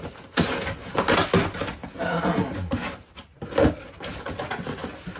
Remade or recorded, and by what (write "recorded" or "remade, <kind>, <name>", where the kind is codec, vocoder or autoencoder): recorded